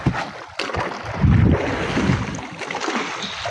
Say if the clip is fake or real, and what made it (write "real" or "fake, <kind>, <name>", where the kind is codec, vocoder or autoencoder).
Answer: real